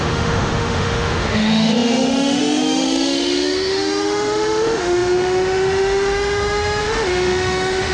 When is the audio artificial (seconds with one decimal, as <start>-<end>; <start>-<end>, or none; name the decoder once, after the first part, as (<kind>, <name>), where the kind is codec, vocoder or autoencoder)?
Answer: 0.0-7.9 (autoencoder, DAC-VAE)